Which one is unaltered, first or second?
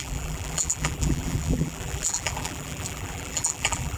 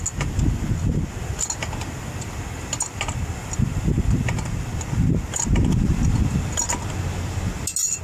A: second